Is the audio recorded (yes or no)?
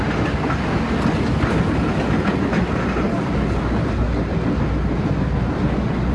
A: yes